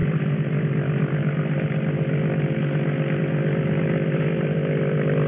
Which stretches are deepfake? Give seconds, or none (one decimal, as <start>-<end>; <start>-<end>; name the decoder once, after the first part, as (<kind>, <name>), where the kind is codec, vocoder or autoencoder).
none